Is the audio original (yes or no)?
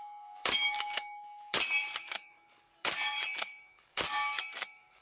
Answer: no